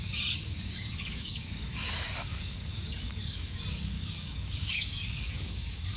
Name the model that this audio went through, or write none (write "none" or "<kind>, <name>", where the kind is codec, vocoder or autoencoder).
codec, DAC